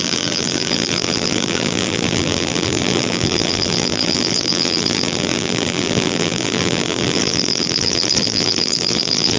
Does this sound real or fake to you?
fake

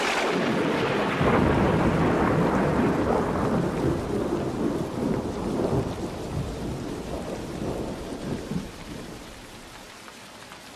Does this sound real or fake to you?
fake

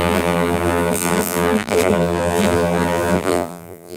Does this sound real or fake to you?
fake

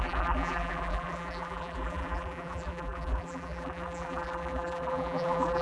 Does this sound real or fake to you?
fake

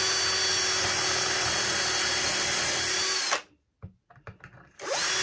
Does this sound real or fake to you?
real